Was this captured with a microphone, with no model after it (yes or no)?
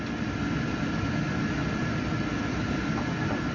yes